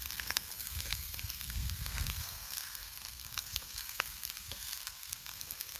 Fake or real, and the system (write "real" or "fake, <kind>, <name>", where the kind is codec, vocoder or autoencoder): fake, codec, SNAC